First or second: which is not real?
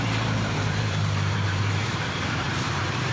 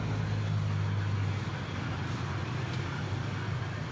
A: first